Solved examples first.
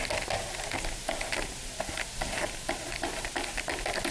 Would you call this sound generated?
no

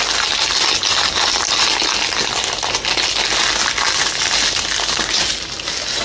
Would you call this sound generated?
no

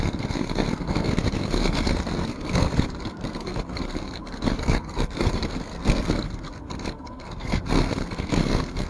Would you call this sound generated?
yes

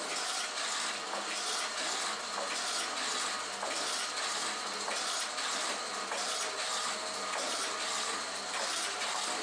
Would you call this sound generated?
no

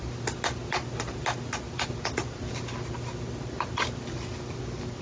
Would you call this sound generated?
no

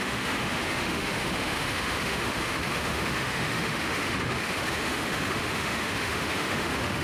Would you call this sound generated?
yes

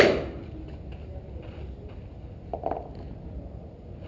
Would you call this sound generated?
no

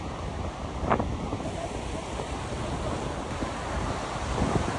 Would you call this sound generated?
no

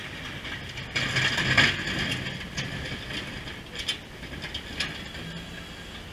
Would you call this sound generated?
no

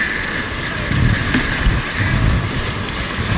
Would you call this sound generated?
no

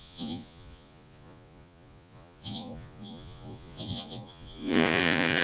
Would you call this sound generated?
yes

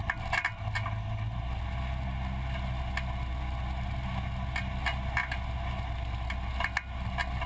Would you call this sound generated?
no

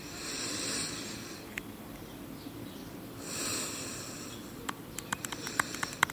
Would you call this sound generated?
yes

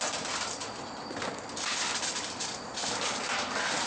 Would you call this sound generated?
no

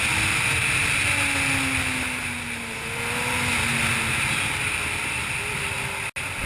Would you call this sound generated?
no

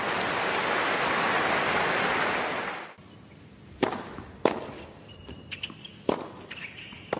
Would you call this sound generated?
no